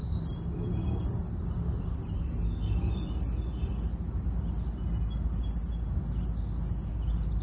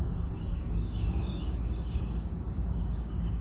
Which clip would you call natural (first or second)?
first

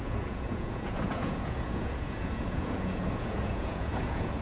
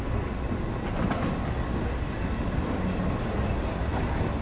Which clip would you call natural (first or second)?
second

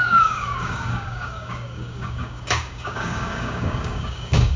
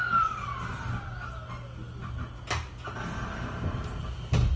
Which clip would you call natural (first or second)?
second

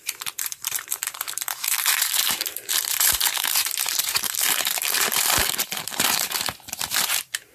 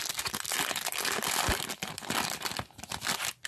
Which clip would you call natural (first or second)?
second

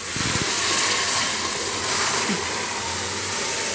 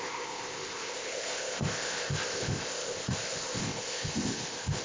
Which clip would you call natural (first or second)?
first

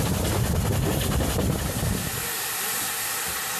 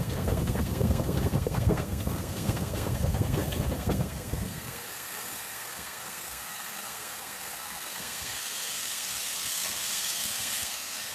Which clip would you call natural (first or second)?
first